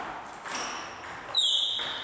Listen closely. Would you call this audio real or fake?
real